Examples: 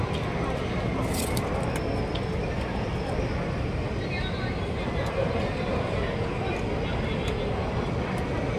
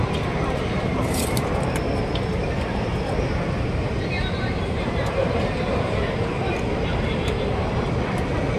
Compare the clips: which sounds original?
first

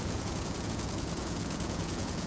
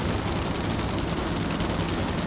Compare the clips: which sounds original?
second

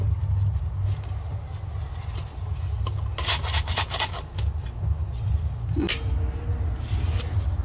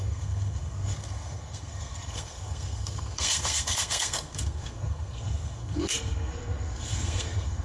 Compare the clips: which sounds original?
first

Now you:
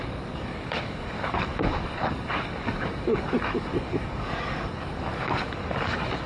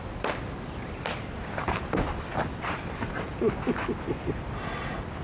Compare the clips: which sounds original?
second